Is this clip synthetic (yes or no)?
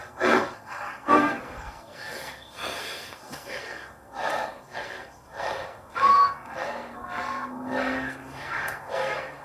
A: yes